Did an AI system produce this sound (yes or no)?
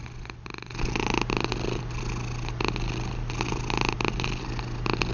no